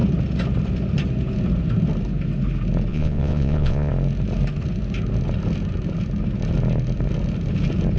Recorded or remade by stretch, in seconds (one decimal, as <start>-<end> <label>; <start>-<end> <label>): 0.0-2.9 recorded; 2.9-3.9 remade; 3.9-8.0 recorded